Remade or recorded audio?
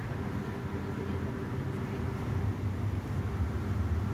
recorded